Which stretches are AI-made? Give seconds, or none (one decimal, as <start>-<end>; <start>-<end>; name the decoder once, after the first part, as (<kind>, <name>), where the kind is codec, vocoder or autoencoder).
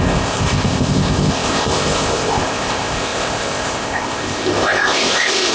0.0-5.5 (codec, ZipCodec)